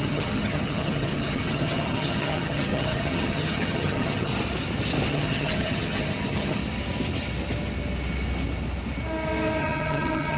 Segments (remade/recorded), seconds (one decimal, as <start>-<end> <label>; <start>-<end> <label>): 0.0-4.3 remade; 4.3-5.1 recorded; 5.1-6.6 remade; 6.6-9.6 recorded; 9.6-10.4 remade